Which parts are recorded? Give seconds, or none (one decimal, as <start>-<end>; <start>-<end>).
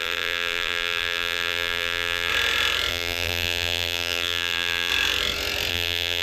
2.3-2.9; 4.9-5.7